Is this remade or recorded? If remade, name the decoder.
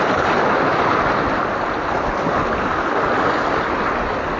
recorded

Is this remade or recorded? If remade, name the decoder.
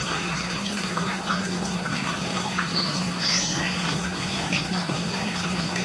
remade, codec, SNAC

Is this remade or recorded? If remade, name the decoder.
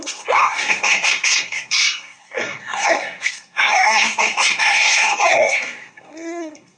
remade, codec, SNAC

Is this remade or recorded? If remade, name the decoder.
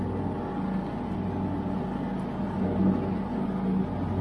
recorded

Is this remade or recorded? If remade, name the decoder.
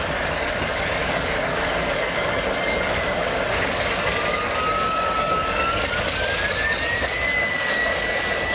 remade, codec, DAC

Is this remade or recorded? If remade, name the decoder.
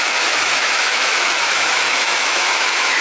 remade, autoencoder, DAC-VAE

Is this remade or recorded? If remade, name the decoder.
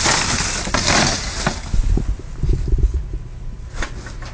recorded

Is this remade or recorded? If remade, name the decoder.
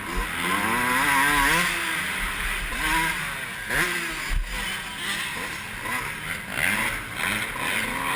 recorded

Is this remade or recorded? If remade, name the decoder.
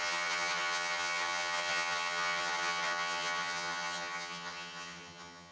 remade, vocoder, HiFi-GAN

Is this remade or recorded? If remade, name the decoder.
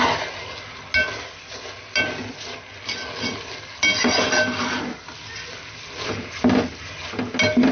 recorded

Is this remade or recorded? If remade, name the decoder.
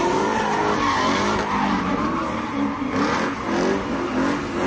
recorded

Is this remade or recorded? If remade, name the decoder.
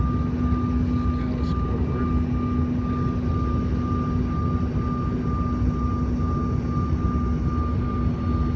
recorded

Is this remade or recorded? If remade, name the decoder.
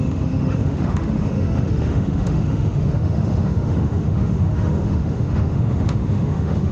remade, autoencoder, DAC-VAE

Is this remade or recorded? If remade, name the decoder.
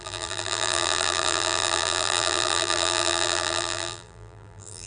remade, vocoder, BigVGAN v2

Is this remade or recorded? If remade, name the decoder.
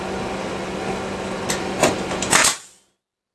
recorded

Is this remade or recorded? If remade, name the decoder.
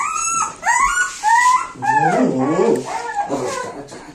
recorded